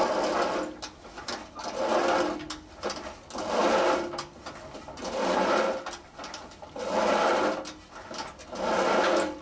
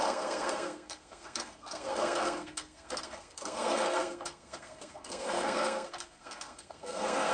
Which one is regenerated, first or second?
second